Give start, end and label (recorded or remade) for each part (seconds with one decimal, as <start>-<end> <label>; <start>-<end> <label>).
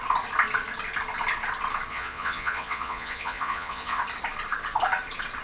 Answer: 0.0-1.9 recorded; 1.9-4.0 remade; 4.0-5.4 recorded